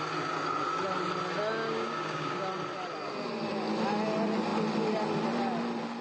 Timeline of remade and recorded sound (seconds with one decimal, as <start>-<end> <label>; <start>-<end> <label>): 0.0-1.6 recorded; 1.6-2.5 remade; 2.5-6.0 recorded